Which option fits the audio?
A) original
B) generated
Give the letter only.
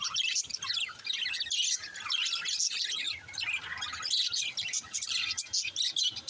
A